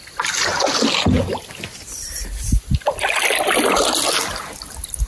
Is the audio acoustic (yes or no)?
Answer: yes